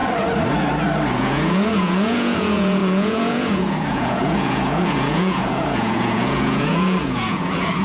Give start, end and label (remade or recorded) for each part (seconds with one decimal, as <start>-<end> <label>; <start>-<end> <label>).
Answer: 0.0-1.2 recorded; 1.2-7.8 remade